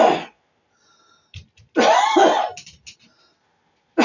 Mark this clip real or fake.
real